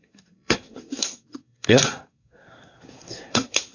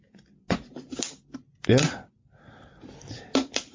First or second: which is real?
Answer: second